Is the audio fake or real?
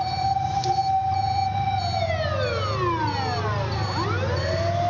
real